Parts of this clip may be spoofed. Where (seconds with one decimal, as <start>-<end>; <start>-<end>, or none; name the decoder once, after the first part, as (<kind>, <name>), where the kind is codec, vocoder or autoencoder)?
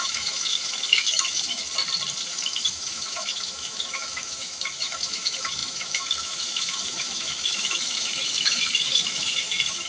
0.0-1.6 (autoencoder, DAC-VAE); 2.3-9.9